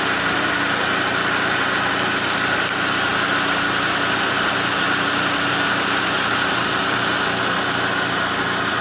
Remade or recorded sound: recorded